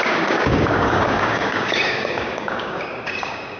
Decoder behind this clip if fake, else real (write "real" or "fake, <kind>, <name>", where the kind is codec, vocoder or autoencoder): fake, codec, DAC